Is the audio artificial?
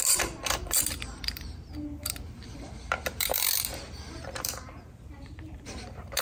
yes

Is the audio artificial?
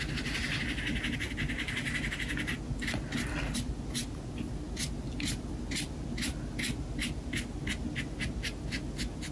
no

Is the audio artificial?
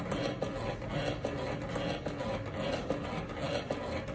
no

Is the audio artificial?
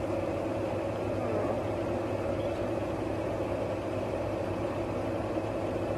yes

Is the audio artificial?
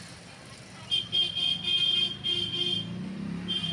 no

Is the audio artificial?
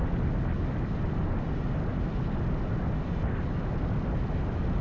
no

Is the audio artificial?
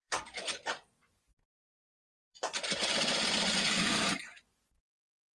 yes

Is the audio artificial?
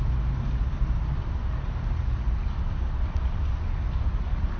no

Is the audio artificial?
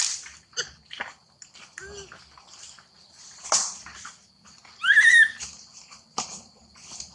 yes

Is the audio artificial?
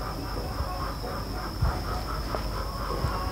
no